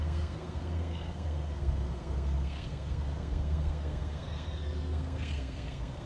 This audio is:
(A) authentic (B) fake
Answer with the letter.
B